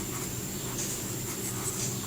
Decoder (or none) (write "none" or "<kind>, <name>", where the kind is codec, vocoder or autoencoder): none